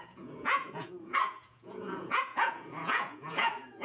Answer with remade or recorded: remade